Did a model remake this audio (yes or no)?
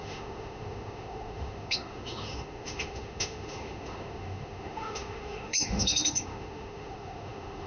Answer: yes